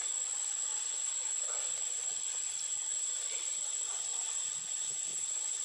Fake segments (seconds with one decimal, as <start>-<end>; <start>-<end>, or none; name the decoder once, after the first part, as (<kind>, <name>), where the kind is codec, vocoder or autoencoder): 0.7-1.3 (vocoder, WaveNeXt); 5.1-5.6